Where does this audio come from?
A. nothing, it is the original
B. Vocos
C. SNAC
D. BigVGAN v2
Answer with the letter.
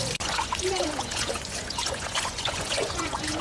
B